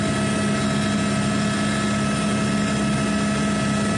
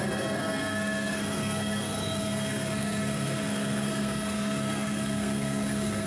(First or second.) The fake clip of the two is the second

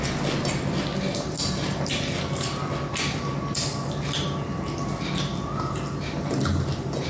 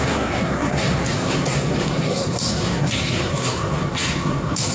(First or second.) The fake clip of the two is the second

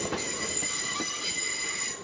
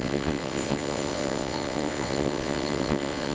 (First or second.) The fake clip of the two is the second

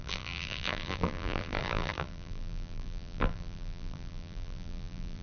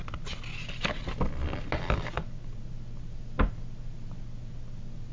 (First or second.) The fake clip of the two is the first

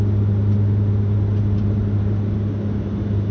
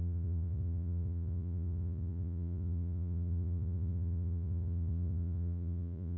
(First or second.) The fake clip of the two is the second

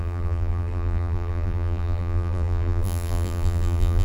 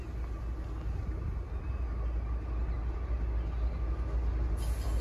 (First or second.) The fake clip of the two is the first